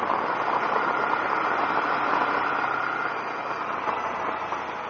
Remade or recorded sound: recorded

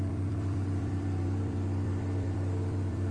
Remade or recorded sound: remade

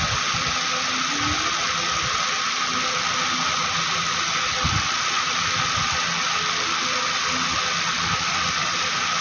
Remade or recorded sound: recorded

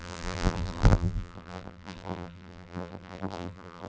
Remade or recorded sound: remade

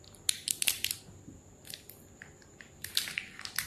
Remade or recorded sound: recorded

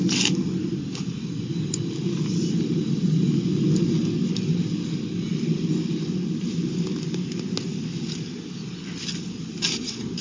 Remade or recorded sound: recorded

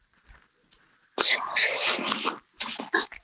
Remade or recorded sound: recorded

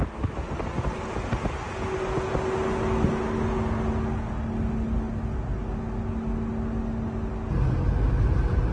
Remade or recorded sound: recorded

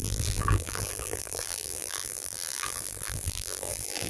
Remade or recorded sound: remade